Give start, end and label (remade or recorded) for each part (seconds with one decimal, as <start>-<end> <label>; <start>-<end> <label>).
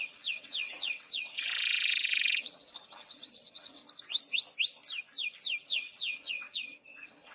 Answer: 0.0-3.8 remade; 3.8-5.6 recorded; 5.6-7.3 remade